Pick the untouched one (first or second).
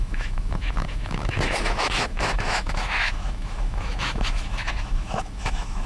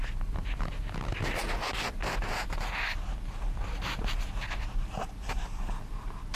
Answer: second